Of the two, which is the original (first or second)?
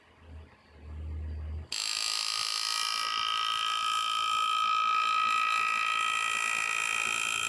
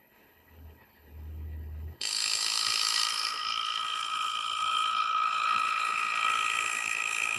first